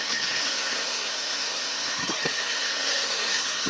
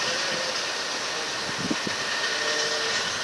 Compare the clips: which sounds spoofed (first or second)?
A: first